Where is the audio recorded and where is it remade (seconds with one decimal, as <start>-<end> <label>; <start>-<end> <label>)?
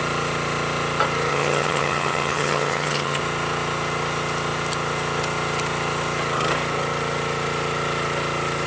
0.0-1.3 recorded; 1.3-3.2 remade; 3.2-8.7 recorded